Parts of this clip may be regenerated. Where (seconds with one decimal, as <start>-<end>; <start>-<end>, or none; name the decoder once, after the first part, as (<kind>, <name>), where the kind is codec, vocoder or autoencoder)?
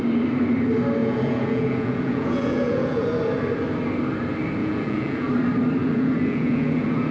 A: 1.0-3.1 (vocoder, Vocos); 4.6-5.3; 5.8-7.1